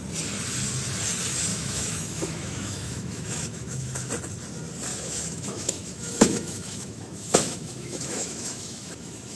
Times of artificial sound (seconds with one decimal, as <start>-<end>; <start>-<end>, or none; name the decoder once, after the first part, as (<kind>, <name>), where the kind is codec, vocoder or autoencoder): 1.5-4.1 (autoencoder, DAC-VAE); 4.9-9.4